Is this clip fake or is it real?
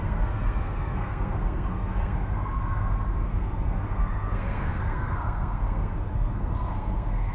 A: fake